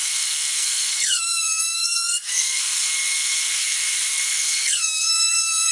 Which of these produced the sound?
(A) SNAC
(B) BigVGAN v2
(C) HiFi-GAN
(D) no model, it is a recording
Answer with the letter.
A